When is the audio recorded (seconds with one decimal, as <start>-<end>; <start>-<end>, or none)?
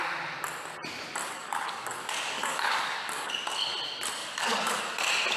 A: 0.0-1.2; 3.3-4.2; 4.8-5.4